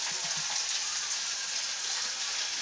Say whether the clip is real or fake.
real